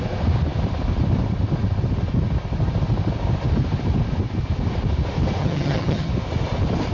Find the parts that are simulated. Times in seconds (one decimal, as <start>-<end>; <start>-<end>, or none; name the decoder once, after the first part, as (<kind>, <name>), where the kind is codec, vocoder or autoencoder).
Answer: 5.4-6.1 (vocoder, HiFi-GAN)